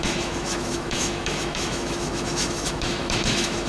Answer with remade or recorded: remade